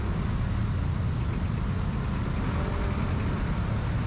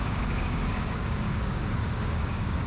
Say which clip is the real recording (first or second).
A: first